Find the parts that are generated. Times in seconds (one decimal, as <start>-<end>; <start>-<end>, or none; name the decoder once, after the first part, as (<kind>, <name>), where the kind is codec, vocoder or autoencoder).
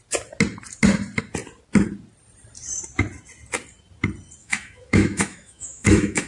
4.4-6.3 (autoencoder, DAC-VAE)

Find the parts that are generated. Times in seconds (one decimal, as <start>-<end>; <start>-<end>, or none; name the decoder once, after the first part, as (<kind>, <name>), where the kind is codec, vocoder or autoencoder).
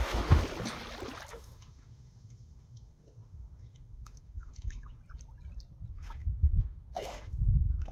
0.0-0.4 (autoencoder, DAC-VAE); 1.3-5.0; 5.9-7.9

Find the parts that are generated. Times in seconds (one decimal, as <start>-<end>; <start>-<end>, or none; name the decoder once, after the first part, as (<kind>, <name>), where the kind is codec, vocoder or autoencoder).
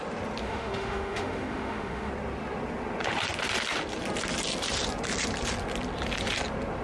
0.4-2.1 (autoencoder, DAC-VAE)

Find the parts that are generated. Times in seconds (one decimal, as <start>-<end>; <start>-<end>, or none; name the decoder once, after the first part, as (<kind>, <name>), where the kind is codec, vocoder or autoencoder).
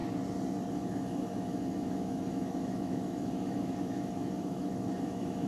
0.7-5.5 (autoencoder, DAC-VAE)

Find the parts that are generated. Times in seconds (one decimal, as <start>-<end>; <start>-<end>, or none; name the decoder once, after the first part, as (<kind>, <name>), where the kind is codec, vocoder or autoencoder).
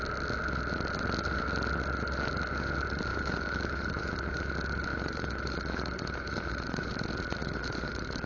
3.1-4.5 (autoencoder, DAC-VAE); 4.9-6.9; 7.4-8.3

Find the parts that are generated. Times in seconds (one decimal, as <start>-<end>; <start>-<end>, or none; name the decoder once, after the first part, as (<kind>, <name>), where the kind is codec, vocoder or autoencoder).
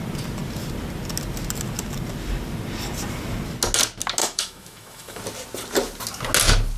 4.2-5.2 (autoencoder, DAC-VAE)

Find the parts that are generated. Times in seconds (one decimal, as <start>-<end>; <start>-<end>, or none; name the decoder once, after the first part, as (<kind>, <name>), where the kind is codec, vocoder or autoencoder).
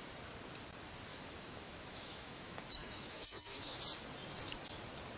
1.1-3.8 (autoencoder, DAC-VAE)